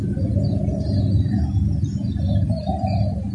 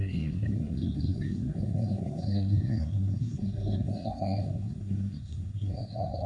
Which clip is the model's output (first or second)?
second